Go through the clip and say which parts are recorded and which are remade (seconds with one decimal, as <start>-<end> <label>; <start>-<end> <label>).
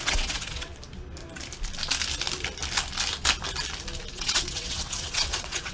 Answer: 0.0-0.7 remade; 0.7-4.1 recorded; 4.1-5.7 remade